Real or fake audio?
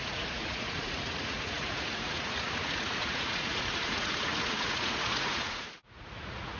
fake